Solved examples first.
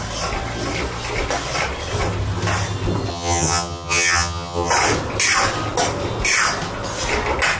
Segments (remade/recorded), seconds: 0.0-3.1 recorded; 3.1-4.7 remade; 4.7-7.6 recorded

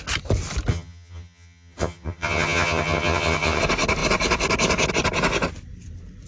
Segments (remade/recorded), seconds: 0.0-0.7 recorded; 0.7-3.6 remade; 3.6-6.3 recorded